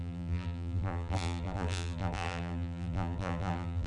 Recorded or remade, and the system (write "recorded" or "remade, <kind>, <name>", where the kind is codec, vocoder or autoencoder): remade, vocoder, BigVGAN v2